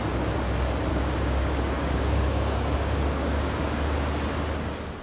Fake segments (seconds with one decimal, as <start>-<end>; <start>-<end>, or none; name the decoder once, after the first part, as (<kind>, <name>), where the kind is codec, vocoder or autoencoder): 0.9-3.8 (codec, DAC)